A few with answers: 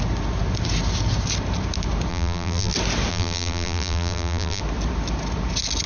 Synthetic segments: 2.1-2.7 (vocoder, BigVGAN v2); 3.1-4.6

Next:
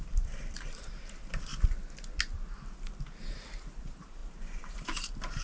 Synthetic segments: 0.0-1.5 (vocoder, BigVGAN v2); 3.8-5.4